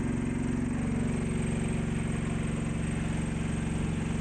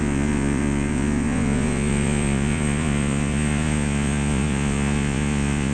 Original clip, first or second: first